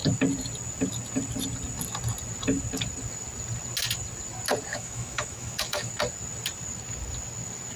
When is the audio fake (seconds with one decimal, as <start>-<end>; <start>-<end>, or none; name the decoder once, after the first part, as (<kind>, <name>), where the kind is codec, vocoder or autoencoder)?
4.7-5.9 (autoencoder, DAC-VAE)

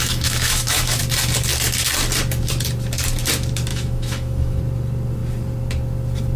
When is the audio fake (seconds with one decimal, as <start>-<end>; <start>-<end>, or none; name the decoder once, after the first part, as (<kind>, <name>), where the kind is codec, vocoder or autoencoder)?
0.0-1.0 (autoencoder, DAC-VAE); 3.7-4.6

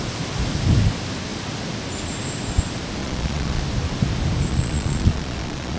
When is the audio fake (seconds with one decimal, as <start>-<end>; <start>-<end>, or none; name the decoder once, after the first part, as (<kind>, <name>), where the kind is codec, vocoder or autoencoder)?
3.0-3.6 (vocoder, Vocos); 4.5-5.8

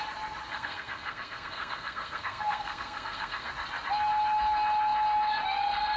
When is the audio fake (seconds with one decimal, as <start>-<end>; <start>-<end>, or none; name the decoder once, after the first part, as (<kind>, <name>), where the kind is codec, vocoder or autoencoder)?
0.5-3.5 (codec, SNAC)

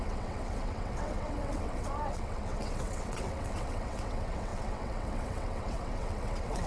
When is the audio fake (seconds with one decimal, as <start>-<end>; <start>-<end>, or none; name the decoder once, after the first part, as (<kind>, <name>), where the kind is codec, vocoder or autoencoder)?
0.0-6.7 (vocoder, WaveNeXt)

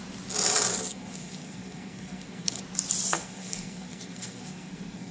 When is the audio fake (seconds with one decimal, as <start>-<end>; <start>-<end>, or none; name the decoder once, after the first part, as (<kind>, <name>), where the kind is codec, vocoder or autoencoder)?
0.7-2.6 (codec, SNAC); 3.1-5.1